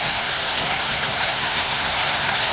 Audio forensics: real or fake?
fake